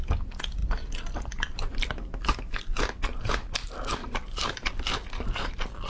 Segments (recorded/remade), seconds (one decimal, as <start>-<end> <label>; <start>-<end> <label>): 0.0-0.6 recorded; 0.6-1.7 remade; 1.7-3.6 recorded; 3.6-4.7 remade; 4.7-5.9 recorded